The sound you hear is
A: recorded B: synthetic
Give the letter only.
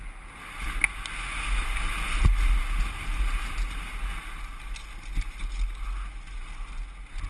A